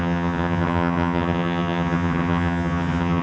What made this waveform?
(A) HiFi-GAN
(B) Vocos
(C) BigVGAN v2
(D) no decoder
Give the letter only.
A